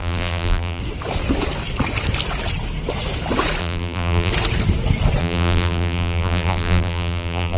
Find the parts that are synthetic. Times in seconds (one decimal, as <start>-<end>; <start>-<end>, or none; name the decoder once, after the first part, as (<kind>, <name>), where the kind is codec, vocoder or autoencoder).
0.0-0.8 (vocoder, BigVGAN v2); 3.6-4.3; 5.2-7.6